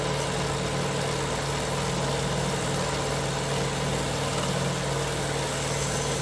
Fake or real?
real